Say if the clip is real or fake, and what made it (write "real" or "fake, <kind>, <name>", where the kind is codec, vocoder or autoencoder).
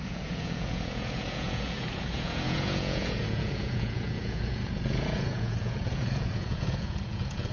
fake, vocoder, Vocos